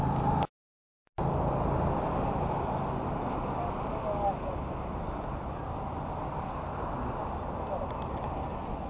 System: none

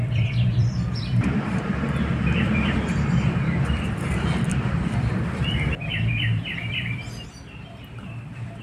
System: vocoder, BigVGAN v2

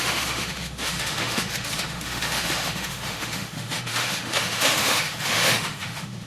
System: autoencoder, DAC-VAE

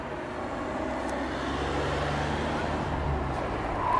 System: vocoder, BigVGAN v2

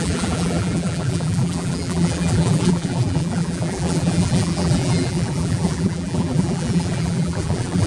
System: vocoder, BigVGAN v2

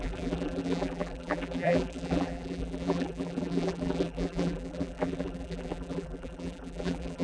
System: vocoder, BigVGAN v2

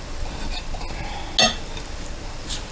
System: none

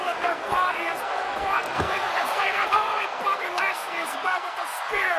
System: codec, SNAC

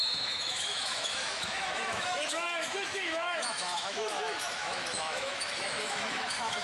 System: autoencoder, DAC-VAE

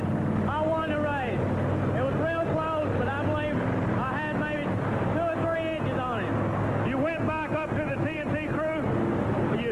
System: none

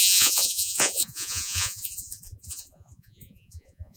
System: vocoder, Vocos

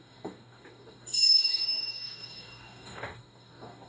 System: codec, DAC